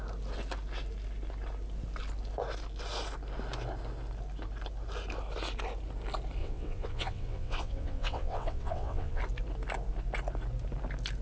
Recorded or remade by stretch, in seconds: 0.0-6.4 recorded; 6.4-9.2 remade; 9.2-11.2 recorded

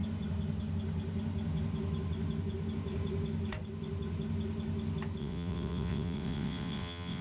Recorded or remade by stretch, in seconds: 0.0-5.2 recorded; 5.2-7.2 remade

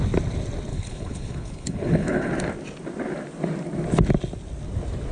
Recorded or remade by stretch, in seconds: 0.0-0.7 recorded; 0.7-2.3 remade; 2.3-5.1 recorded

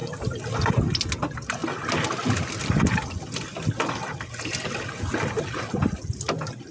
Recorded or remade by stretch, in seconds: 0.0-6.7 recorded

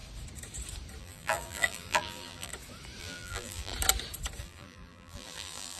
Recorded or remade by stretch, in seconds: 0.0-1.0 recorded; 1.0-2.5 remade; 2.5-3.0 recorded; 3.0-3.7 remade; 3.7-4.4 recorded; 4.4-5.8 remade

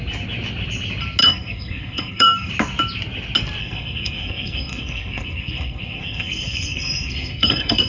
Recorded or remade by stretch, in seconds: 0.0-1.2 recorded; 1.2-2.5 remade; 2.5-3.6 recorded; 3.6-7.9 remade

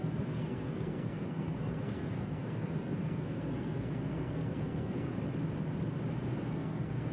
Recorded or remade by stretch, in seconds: 0.0-5.1 remade; 5.1-6.5 recorded; 6.5-7.1 remade